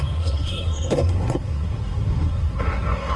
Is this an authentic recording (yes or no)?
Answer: no